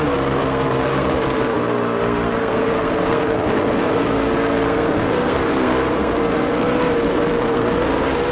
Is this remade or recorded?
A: remade